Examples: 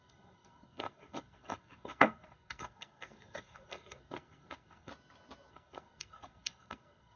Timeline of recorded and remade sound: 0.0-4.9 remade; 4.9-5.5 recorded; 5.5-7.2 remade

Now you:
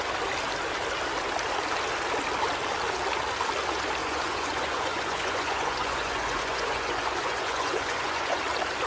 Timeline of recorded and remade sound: 0.0-4.0 recorded; 4.0-8.4 remade; 8.4-8.9 recorded

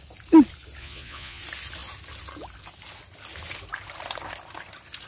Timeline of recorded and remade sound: 0.0-0.8 recorded; 0.8-1.4 remade; 1.4-5.1 recorded

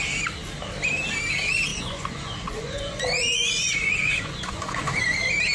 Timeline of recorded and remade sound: 0.0-1.7 recorded; 1.7-5.0 remade; 5.0-5.5 recorded

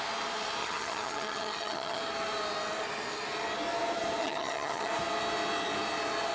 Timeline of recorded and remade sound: 0.0-0.6 recorded; 0.6-2.0 remade; 2.0-4.2 recorded; 4.2-4.9 remade; 4.9-6.3 recorded

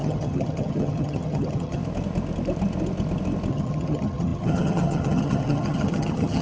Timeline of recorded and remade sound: 0.0-1.8 remade; 1.8-3.5 recorded; 3.5-6.4 remade

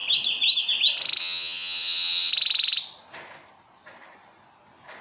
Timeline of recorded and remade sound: 0.0-1.2 recorded; 1.2-2.3 remade; 2.3-5.0 recorded